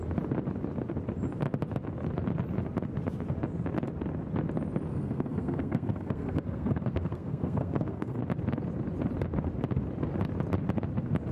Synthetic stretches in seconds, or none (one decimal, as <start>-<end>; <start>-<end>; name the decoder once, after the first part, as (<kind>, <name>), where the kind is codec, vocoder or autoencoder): 4.9-8.2 (codec, SNAC)